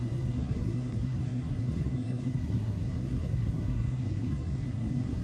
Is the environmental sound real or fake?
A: fake